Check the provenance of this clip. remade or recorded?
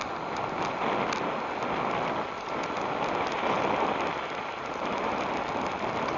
recorded